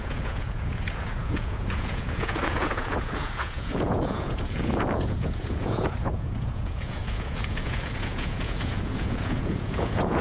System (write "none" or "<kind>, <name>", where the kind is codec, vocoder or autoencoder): vocoder, Vocos